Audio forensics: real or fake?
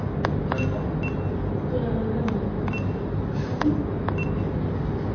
real